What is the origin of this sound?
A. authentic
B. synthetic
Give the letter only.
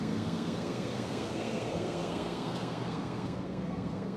B